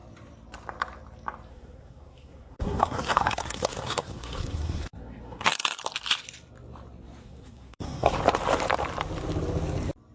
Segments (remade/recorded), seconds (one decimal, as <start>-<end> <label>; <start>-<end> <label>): 0.0-1.5 recorded; 1.5-5.8 remade; 5.8-7.2 recorded; 7.2-8.1 remade; 8.1-10.1 recorded